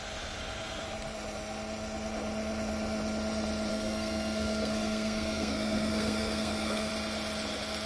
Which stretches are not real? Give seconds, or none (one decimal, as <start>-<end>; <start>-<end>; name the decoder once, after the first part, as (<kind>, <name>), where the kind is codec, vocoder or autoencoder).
3.7-6.9 (codec, SNAC)